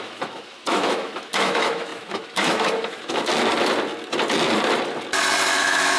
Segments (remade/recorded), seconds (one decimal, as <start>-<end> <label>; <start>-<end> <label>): 0.0-3.3 remade; 3.3-5.6 recorded; 5.6-6.0 remade